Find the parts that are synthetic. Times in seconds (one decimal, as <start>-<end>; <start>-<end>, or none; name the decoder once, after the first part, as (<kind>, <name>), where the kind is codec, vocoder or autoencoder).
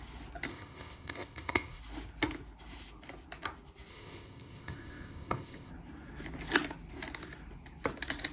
0.5-1.8 (codec, ZipCodec); 3.9-5.7